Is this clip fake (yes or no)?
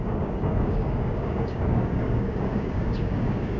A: yes